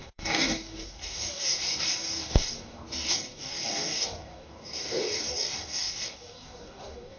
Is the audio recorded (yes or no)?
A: no